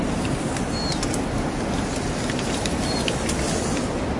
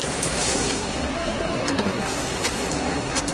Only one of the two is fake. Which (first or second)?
second